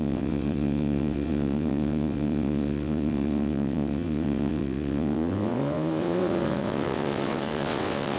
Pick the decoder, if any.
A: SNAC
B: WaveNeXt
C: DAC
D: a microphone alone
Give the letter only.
B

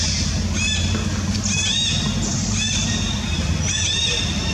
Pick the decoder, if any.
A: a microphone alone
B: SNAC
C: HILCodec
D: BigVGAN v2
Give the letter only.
D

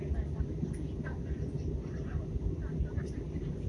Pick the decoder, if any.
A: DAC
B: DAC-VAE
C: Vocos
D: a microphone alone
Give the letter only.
D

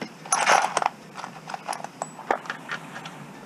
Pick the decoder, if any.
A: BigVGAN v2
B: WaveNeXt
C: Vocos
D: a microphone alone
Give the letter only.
D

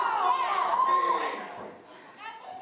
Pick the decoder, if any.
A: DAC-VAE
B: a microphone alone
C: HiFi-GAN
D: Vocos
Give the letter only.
B